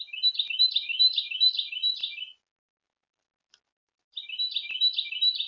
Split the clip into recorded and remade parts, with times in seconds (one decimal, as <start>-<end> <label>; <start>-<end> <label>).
0.0-5.5 recorded